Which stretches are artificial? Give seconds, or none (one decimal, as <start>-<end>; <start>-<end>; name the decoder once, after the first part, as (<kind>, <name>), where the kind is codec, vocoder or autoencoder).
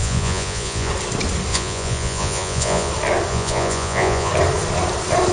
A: 0.0-0.9 (vocoder, Vocos); 1.5-2.9; 3.3-4.3